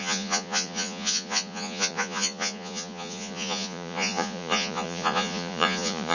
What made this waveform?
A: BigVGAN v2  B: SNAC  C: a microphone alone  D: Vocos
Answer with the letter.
D